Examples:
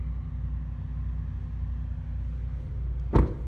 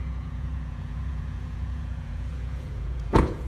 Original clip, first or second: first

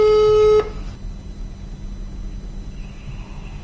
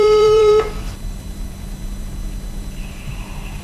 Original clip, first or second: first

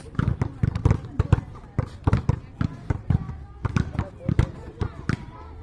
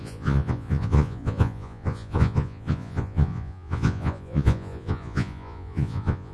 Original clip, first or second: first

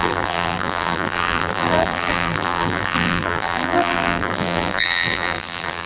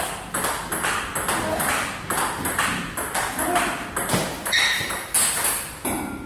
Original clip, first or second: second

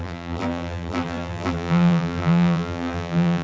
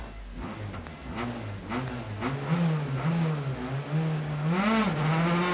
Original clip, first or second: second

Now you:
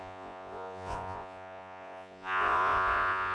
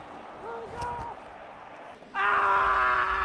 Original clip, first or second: second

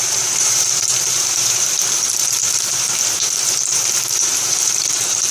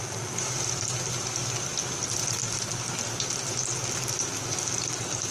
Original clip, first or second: second